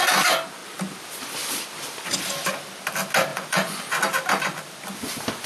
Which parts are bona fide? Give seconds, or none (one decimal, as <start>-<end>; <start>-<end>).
0.0-3.3; 3.8-5.5